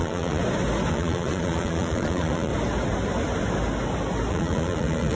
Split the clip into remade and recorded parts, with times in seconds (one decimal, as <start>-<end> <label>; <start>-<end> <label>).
0.0-0.4 remade; 0.4-0.9 recorded; 0.9-2.5 remade; 2.5-4.3 recorded; 4.3-5.2 remade